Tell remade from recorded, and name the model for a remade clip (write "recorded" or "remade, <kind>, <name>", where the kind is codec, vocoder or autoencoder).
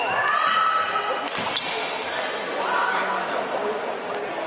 recorded